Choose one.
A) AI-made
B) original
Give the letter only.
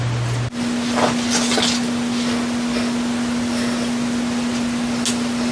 B